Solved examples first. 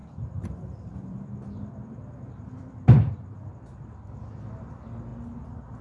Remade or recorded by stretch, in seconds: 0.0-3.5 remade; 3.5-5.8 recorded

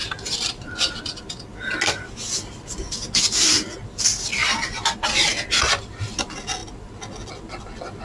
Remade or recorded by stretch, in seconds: 0.0-1.2 remade; 1.2-4.4 recorded; 4.4-5.1 remade; 5.1-8.0 recorded